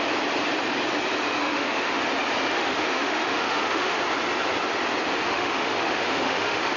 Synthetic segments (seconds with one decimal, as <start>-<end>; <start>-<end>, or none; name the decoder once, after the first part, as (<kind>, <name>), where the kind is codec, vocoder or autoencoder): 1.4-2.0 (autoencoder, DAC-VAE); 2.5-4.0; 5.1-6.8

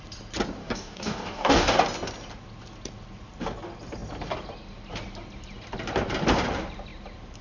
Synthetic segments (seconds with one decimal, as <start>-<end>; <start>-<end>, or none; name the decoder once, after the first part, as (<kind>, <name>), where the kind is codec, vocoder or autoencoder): 0.6-1.8 (codec, DAC)

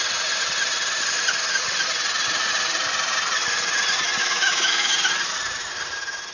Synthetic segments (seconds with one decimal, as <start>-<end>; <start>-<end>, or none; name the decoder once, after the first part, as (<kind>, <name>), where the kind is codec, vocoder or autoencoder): 4.2-4.9 (autoencoder, DAC-VAE)